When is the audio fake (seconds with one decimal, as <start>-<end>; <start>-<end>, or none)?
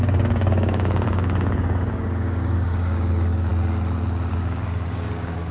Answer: 0.0-3.5; 4.3-5.5